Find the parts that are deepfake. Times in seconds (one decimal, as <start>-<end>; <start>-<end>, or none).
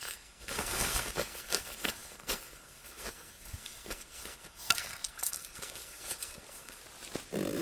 0.0-6.8